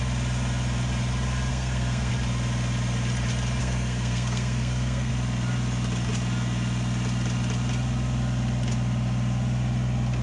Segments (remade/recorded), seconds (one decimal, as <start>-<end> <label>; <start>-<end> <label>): 0.0-1.5 recorded; 1.5-2.1 remade; 2.1-3.6 recorded; 3.6-5.1 remade; 5.1-10.2 recorded